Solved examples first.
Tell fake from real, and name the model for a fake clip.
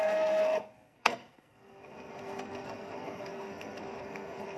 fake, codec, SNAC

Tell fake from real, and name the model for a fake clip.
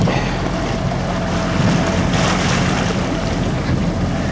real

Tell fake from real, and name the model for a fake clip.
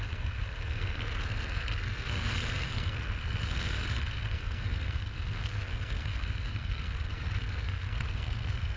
fake, codec, SNAC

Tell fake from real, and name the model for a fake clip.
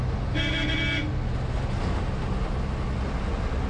real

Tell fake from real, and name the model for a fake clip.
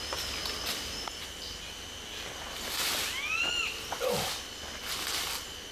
real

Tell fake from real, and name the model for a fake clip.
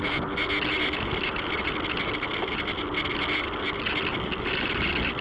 real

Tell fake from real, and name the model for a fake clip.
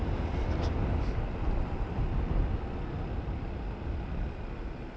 real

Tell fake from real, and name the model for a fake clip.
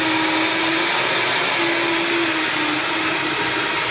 real